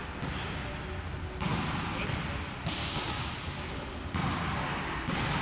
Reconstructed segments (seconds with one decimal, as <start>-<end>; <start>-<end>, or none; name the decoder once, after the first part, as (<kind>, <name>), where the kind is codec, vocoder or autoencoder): 2.8-3.3 (codec, DAC)